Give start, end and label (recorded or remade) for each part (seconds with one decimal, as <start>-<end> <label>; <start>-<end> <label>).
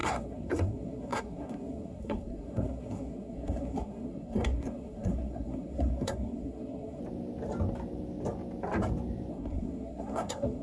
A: 0.0-7.0 remade; 7.0-9.3 recorded; 9.3-10.6 remade